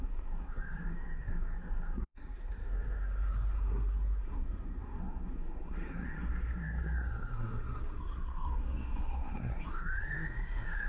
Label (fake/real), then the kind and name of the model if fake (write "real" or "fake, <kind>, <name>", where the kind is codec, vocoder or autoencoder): fake, codec, SNAC